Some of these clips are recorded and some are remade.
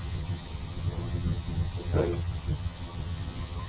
remade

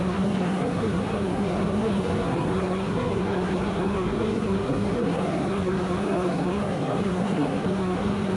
remade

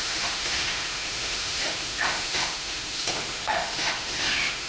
remade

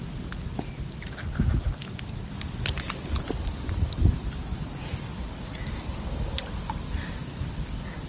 recorded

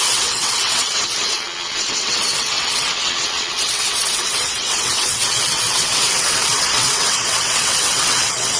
remade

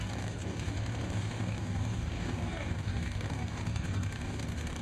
remade